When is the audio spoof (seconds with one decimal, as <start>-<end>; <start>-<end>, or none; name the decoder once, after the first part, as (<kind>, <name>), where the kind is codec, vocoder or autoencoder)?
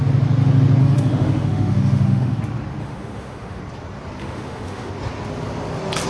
0.8-2.4 (autoencoder, DAC-VAE); 2.8-3.6; 4.2-4.9